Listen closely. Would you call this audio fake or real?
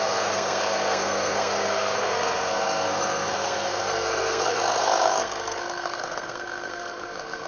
fake